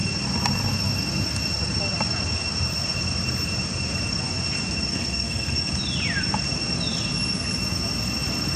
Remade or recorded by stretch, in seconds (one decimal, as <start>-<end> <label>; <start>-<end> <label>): 0.0-4.9 recorded; 4.9-5.7 remade; 5.7-8.6 recorded